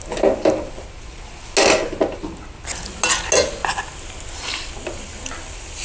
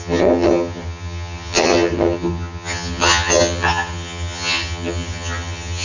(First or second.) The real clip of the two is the first